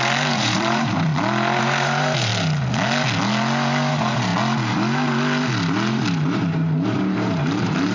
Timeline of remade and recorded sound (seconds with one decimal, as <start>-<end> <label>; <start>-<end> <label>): 0.0-1.1 remade; 1.1-1.6 recorded; 1.6-2.3 remade; 2.3-3.9 recorded; 3.9-4.3 remade; 4.3-5.9 recorded; 5.9-7.9 remade